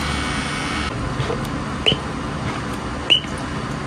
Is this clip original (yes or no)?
yes